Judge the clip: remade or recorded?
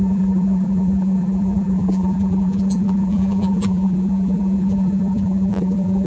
remade